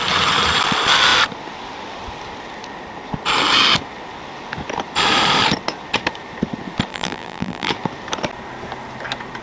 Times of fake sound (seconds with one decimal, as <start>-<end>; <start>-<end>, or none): 6.9-7.7